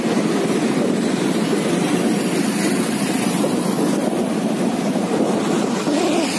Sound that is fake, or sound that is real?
real